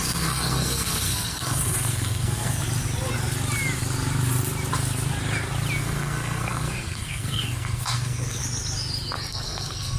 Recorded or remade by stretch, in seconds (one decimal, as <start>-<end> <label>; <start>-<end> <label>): 0.0-2.6 remade; 2.6-5.8 recorded; 5.8-8.4 remade; 8.4-9.3 recorded; 9.3-10.0 remade